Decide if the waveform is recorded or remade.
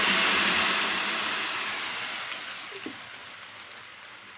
recorded